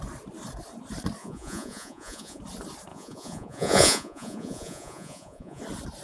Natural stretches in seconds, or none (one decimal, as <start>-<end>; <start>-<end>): 0.0-1.2; 2.4-2.9; 5.6-6.0